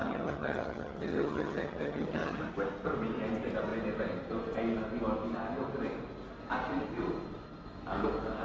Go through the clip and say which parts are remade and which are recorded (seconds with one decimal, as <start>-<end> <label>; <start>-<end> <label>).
0.0-2.4 remade; 2.4-8.4 recorded